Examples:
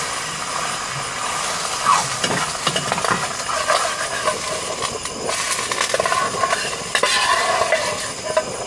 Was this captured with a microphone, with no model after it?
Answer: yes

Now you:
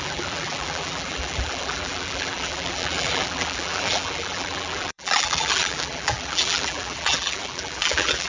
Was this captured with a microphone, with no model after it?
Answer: no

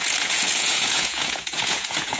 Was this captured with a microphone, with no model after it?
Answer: no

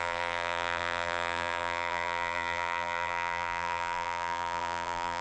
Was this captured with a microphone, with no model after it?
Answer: no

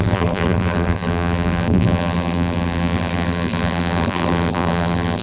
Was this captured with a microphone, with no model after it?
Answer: no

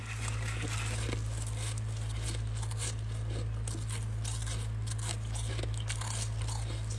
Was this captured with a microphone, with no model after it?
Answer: yes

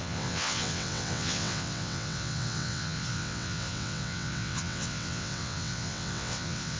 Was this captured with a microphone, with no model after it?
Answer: no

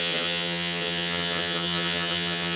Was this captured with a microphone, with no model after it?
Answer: no